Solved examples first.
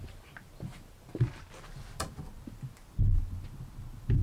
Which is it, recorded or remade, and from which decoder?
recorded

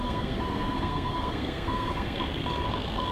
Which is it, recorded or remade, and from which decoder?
remade, codec, SNAC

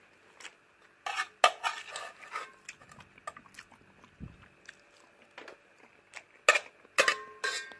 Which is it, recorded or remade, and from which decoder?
recorded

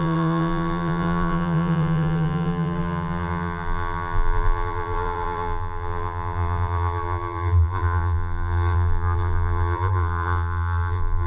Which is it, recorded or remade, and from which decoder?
remade, vocoder, BigVGAN v2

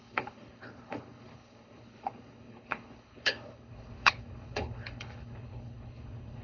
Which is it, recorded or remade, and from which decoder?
remade, codec, HILCodec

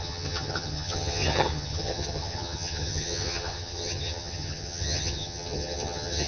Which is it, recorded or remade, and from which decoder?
remade, vocoder, HiFi-GAN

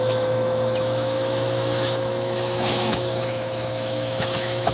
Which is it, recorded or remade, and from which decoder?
remade, autoencoder, DAC-VAE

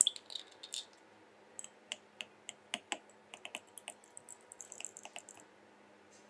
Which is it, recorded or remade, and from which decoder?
recorded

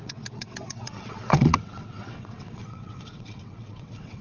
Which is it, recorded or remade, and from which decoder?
remade, vocoder, WaveNeXt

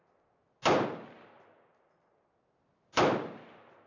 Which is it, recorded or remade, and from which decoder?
recorded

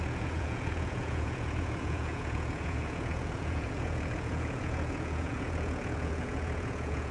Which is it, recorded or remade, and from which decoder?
remade, vocoder, Vocos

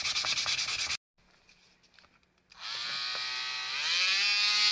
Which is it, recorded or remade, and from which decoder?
recorded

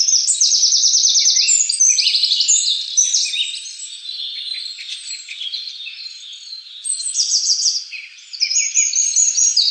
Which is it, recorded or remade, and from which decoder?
remade, vocoder, BigVGAN v2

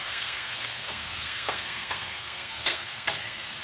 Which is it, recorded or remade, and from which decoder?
remade, codec, SNAC